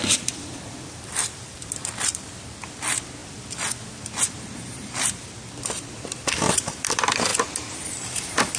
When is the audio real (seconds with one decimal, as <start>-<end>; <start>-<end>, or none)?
7.3-7.8